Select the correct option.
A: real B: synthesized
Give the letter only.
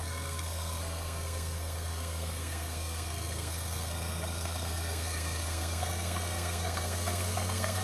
B